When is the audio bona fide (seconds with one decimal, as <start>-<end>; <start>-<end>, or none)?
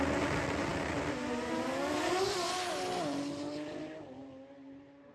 0.0-5.1